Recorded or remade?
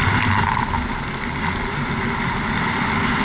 remade